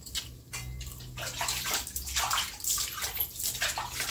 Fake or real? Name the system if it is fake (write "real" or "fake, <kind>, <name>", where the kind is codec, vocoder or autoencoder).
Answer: real